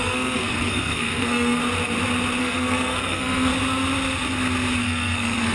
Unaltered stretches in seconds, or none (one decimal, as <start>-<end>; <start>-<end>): 1.6-2.4; 3.5-4.8